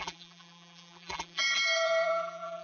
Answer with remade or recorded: remade